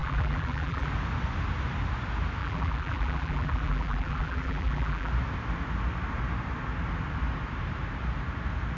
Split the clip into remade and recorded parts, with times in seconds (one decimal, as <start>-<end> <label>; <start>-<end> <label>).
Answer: 0.0-0.9 remade; 0.9-2.4 recorded; 2.4-5.1 remade; 5.1-8.8 recorded